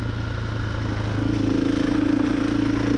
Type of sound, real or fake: real